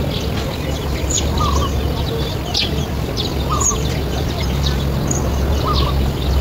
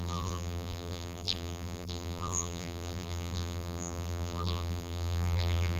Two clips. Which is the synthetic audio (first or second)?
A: second